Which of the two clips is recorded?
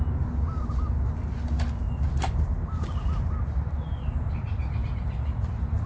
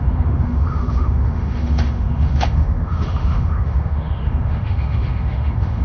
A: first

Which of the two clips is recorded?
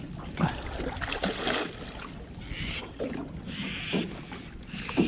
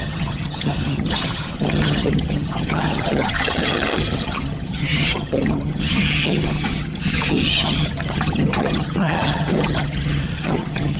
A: first